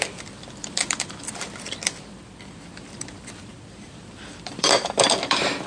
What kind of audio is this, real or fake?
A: fake